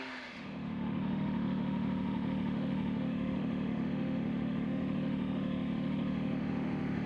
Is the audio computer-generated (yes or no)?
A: yes